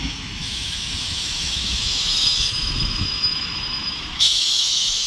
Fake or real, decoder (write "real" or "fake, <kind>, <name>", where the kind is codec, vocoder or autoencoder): fake, autoencoder, DAC-VAE